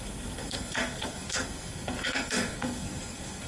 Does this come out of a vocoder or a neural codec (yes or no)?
yes